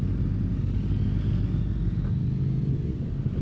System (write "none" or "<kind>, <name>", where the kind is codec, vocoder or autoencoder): none